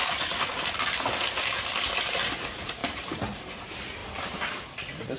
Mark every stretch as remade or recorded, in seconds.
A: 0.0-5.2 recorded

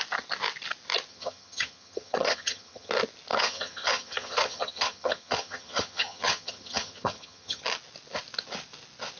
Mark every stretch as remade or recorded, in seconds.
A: 0.0-1.1 recorded; 1.1-2.9 remade; 2.9-3.3 recorded; 3.3-7.6 remade; 7.6-9.2 recorded

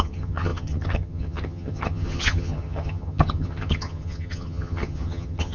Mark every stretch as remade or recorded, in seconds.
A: 0.0-5.5 remade

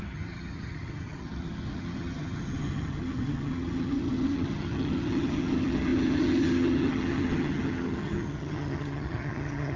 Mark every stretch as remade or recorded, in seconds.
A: 0.0-9.8 remade